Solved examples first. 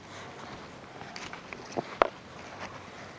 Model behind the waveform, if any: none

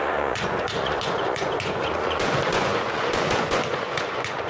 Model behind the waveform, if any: vocoder, Vocos